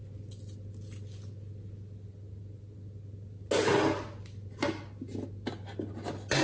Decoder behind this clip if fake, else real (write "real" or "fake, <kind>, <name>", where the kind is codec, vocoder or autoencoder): real